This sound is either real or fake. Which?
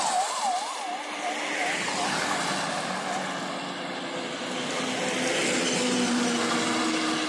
real